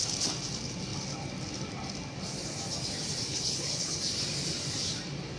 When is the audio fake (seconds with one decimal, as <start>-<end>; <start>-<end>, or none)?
3.3-3.9